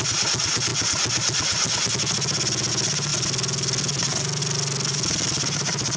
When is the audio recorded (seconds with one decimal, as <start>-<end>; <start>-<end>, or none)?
0.0-6.0